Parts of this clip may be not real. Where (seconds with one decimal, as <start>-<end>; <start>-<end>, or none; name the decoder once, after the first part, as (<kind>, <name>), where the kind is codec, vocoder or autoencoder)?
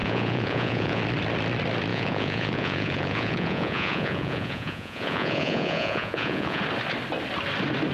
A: 0.0-1.0 (vocoder, Vocos); 1.9-6.6